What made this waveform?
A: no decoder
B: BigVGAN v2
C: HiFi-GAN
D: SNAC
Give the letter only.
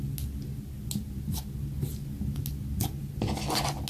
A